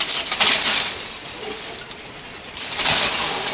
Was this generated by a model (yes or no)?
no